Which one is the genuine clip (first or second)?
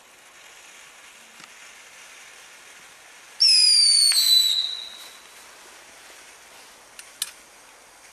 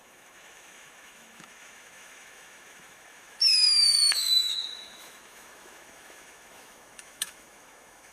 first